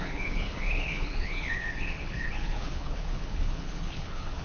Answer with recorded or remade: remade